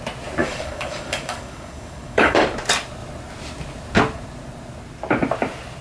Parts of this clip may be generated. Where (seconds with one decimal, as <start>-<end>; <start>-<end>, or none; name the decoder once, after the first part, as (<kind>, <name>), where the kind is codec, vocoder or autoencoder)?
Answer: 0.4-2.4 (codec, DAC)